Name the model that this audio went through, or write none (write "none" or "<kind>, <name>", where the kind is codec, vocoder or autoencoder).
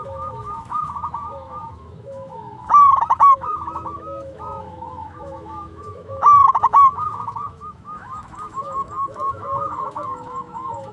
autoencoder, DAC-VAE